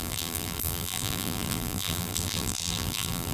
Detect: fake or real fake